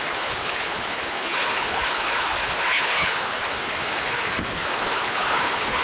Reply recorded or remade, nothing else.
remade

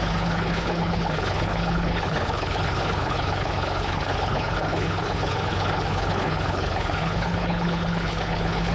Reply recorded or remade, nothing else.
remade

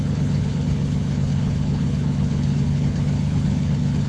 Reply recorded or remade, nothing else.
remade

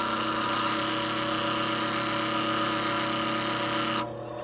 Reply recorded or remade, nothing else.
recorded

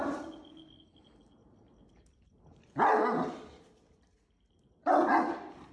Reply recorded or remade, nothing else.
recorded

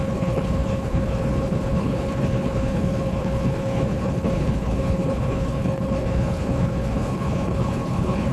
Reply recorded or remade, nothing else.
remade